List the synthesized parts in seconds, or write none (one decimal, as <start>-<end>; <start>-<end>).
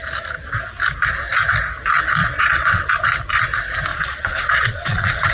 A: 2.2-2.9; 3.9-5.3